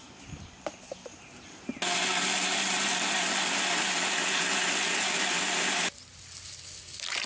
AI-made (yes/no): no